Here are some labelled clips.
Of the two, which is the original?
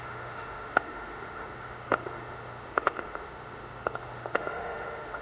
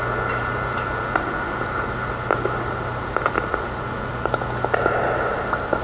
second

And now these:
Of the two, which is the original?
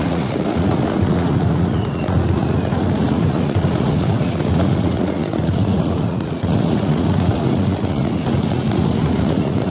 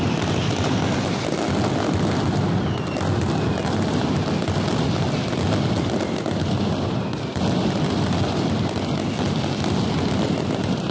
second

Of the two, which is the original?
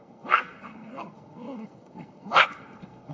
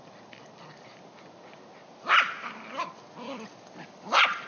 second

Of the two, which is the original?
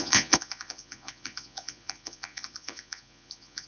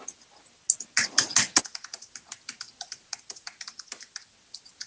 second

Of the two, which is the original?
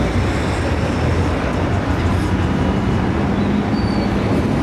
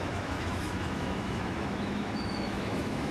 first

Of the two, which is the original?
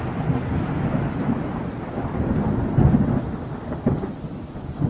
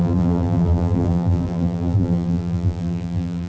first